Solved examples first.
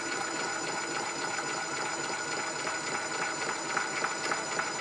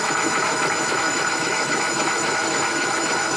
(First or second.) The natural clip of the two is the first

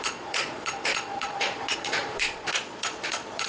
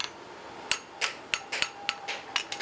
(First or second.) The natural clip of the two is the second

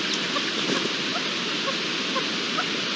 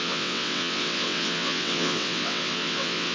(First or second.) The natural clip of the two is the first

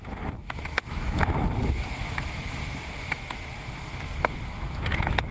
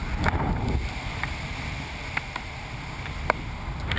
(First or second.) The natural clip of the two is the second